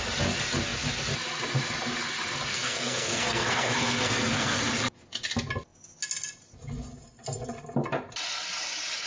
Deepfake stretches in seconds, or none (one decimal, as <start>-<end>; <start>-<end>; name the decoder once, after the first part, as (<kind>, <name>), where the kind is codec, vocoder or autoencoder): 2.5-4.6 (codec, SNAC)